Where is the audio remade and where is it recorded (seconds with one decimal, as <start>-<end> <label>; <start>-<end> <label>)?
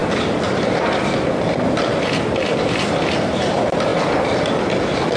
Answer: 0.0-3.1 recorded; 3.1-3.9 remade; 3.9-5.2 recorded